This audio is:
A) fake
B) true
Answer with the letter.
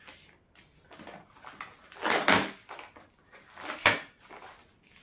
B